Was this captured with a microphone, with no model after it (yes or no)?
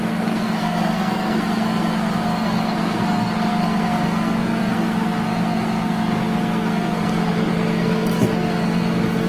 no